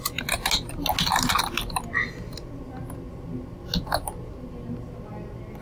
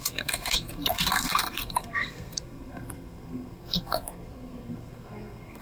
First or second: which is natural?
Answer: first